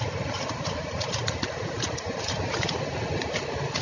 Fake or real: real